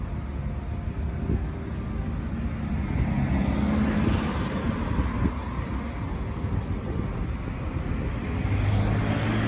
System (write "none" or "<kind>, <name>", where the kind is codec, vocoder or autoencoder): none